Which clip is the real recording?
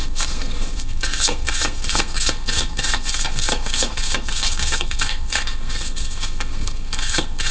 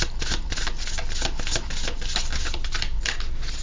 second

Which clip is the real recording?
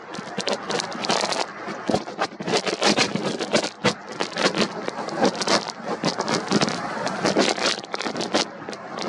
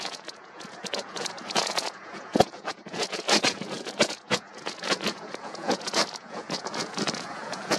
first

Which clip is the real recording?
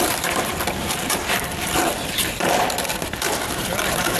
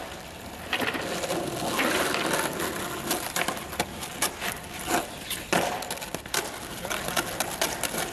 second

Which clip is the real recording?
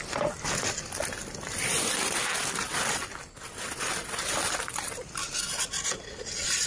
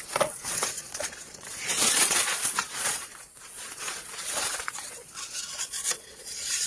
first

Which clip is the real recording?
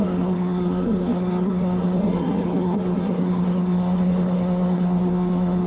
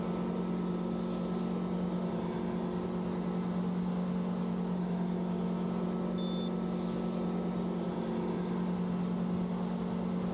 second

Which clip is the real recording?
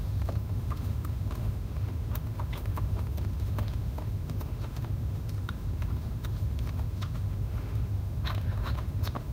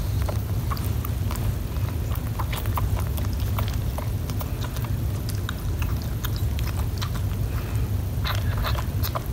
second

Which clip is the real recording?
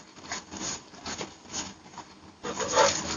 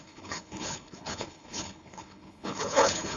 first